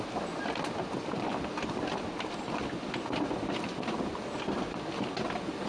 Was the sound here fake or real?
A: real